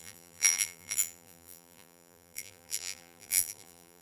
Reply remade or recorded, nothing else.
remade